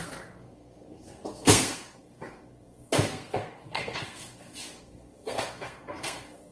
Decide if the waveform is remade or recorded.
remade